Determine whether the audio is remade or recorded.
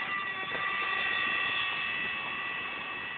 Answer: recorded